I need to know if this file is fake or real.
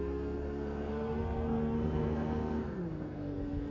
fake